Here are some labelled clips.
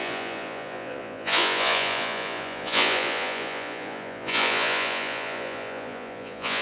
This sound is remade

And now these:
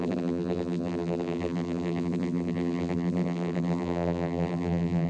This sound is remade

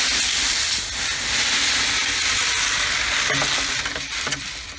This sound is recorded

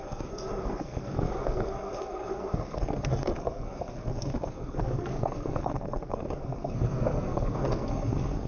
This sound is remade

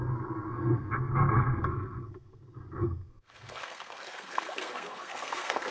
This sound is remade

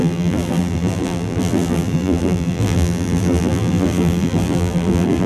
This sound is remade